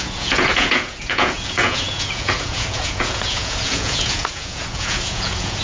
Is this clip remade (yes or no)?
yes